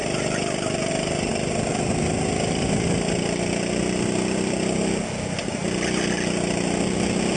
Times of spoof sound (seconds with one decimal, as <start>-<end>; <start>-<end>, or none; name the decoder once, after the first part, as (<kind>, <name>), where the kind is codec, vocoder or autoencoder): 0.0-0.9 (vocoder, BigVGAN v2)